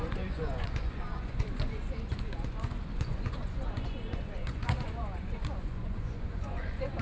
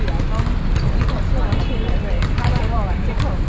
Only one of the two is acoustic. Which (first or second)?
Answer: second